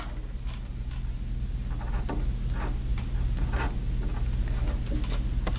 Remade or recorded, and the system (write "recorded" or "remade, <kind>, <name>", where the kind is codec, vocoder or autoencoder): recorded